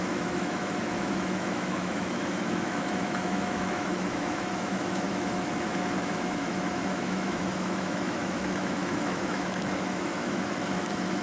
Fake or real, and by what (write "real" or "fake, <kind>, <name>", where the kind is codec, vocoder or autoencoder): fake, autoencoder, DAC-VAE